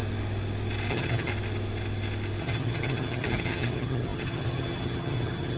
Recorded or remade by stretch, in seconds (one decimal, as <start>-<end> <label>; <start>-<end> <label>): 0.0-0.9 recorded; 0.9-1.3 remade; 1.3-2.4 recorded; 2.4-5.6 remade